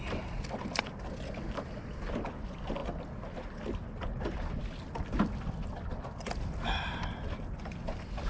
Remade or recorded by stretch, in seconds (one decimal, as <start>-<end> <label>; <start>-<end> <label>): 0.0-8.3 recorded